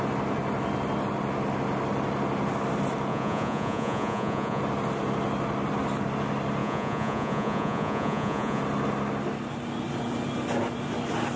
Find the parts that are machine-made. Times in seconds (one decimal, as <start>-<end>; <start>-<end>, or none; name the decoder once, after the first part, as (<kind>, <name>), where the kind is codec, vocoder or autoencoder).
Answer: 3.1-4.6 (vocoder, Vocos); 6.6-8.6

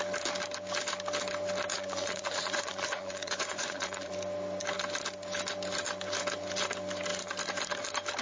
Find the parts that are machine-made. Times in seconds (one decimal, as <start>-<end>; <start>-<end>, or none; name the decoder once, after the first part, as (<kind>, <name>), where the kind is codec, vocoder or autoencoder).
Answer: 1.7-4.1 (vocoder, Vocos)

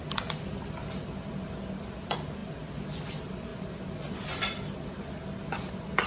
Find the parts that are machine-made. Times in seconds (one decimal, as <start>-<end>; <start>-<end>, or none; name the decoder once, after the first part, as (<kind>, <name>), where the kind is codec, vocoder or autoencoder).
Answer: none

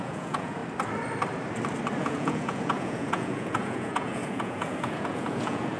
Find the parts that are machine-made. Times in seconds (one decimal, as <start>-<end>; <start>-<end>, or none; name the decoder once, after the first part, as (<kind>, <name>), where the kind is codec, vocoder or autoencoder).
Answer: 0.0-0.6 (vocoder, Vocos); 2.0-5.8

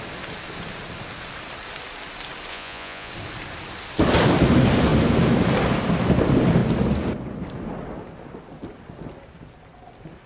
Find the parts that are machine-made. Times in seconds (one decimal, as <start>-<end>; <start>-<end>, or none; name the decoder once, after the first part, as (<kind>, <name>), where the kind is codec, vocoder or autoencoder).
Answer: 2.5-3.1 (vocoder, Vocos)

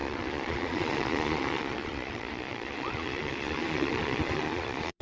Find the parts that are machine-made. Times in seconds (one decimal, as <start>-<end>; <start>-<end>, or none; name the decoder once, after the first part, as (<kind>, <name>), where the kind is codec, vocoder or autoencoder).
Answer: 0.0-5.0 (vocoder, Vocos)